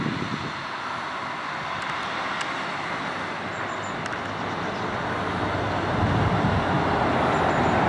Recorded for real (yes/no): yes